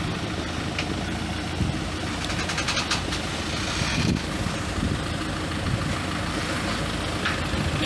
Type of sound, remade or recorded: recorded